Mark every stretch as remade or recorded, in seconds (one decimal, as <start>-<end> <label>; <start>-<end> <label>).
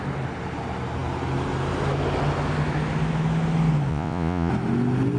0.0-3.9 recorded; 3.9-4.5 remade; 4.5-5.2 recorded